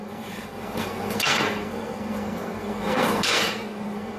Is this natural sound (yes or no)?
no